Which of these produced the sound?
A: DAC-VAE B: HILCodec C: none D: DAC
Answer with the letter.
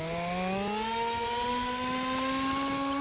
C